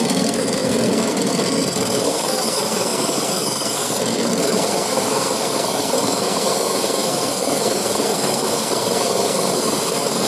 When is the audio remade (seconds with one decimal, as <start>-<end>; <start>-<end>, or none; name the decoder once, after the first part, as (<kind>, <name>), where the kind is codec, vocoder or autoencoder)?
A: 0.0-10.3 (codec, SNAC)